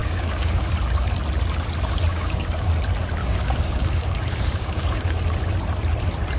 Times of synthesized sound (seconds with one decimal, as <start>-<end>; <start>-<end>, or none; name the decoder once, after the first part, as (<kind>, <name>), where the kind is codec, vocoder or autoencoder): 0.0-0.7 (codec, DAC); 2.1-2.7; 3.2-5.2